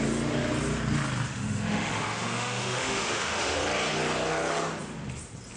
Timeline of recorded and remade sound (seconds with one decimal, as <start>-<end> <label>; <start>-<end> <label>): 0.0-1.3 recorded; 1.3-3.6 remade; 3.6-5.6 recorded